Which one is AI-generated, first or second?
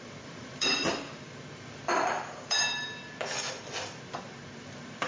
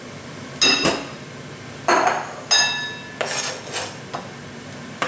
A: first